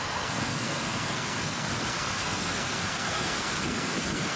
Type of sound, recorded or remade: remade